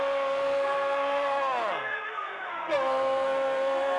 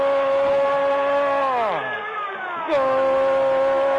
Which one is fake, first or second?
first